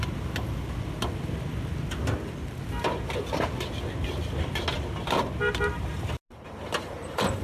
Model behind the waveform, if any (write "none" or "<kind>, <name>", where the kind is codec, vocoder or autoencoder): none